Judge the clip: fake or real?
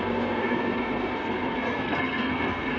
fake